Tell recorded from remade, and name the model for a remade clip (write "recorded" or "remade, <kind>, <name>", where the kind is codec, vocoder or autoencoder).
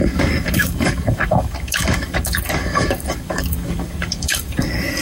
remade, codec, DAC